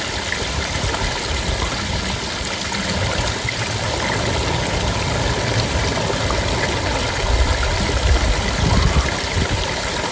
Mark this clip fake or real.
real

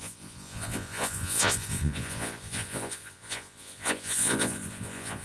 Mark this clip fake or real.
fake